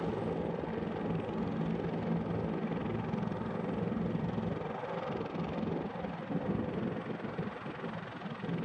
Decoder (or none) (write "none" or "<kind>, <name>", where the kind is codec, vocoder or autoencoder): none